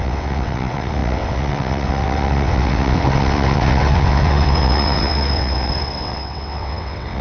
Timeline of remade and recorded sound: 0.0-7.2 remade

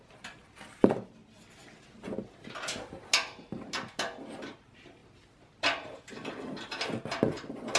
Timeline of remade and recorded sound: 0.0-7.8 recorded

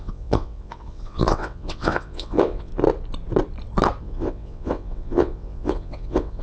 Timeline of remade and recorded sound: 0.0-2.7 remade; 2.7-4.0 recorded; 4.0-6.4 remade

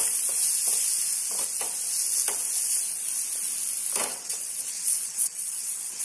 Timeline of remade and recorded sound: 0.0-4.1 recorded; 4.1-6.0 remade

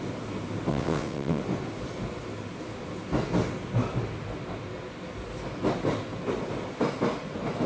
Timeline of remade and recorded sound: 0.0-0.7 recorded; 0.7-1.4 remade; 1.4-7.7 recorded